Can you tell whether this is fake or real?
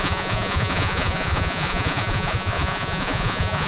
fake